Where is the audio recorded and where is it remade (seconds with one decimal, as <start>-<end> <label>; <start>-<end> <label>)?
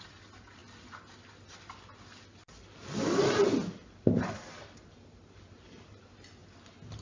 0.0-7.0 recorded